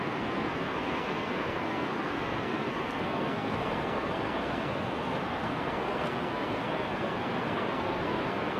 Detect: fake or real fake